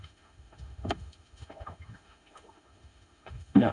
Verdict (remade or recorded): remade